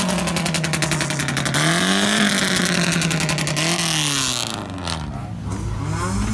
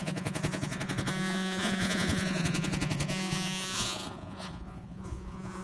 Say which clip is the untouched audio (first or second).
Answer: first